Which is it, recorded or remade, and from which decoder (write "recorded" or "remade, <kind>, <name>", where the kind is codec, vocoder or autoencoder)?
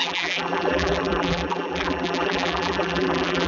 remade, vocoder, BigVGAN v2